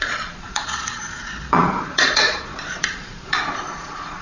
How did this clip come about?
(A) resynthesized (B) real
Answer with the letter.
A